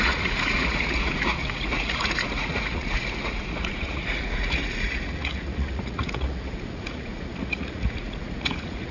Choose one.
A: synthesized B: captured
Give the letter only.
A